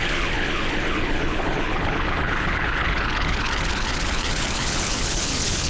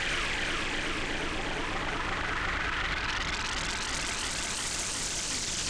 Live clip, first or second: second